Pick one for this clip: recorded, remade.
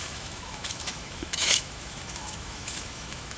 remade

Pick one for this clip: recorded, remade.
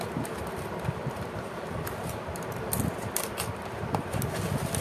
recorded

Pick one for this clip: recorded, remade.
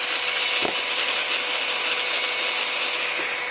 recorded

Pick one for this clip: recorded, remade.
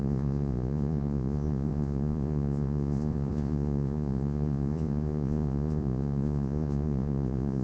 remade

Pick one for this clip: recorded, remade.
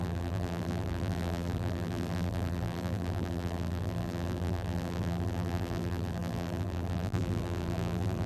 remade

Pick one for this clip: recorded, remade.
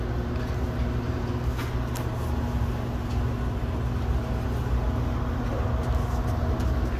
recorded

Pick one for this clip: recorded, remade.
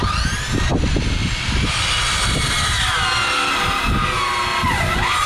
recorded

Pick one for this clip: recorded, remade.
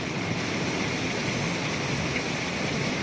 recorded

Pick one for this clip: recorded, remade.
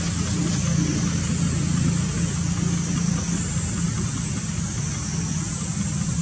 recorded